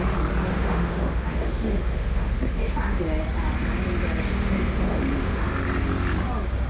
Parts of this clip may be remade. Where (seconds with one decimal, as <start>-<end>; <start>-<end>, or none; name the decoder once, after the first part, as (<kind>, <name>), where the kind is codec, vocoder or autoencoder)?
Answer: 0.5-3.0 (autoencoder, DAC-VAE); 4.3-5.4